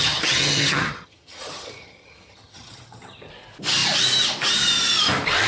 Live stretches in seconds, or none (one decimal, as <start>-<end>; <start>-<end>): 3.3-5.5